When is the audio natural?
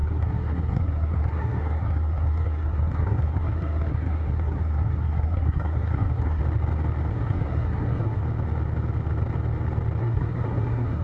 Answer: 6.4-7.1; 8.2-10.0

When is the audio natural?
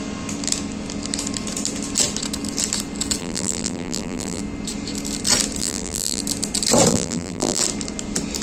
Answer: 0.0-3.2; 4.4-5.6; 6.2-6.9; 7.6-8.4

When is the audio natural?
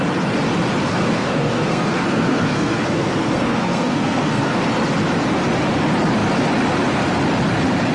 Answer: 0.0-0.9; 4.6-7.9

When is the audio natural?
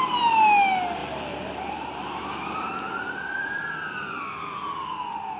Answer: 0.0-1.0; 4.2-5.4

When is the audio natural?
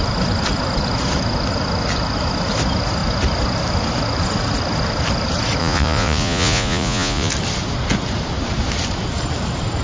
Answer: 0.0-5.6; 7.3-9.8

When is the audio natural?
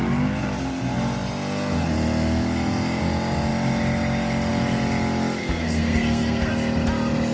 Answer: 0.0-5.4; 6.5-7.3